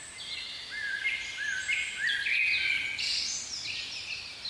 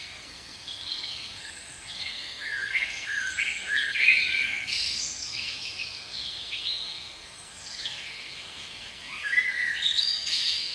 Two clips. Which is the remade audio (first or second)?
second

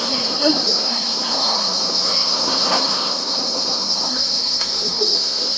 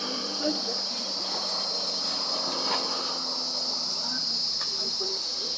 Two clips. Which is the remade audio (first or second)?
first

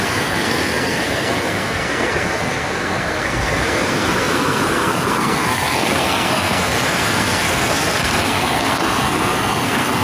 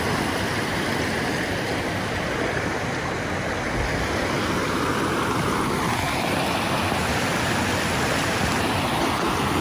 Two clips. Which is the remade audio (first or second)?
first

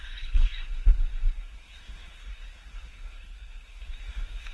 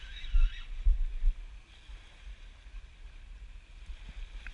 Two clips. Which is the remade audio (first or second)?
first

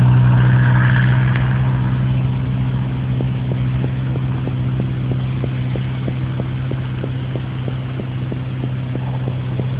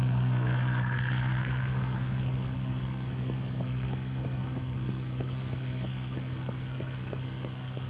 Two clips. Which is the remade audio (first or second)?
second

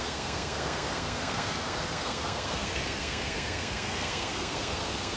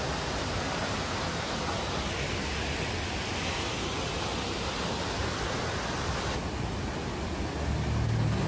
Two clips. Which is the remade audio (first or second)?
first